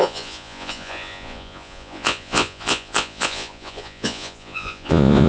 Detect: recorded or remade remade